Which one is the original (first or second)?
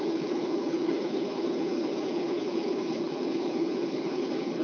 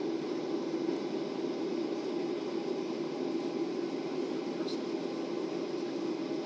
second